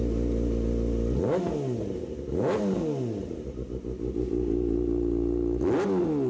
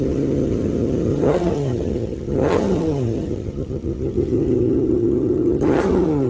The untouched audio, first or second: first